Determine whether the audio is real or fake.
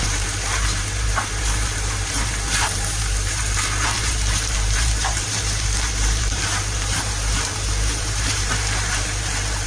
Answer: fake